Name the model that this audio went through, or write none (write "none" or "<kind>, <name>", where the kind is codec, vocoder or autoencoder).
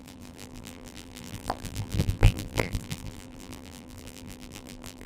vocoder, BigVGAN v2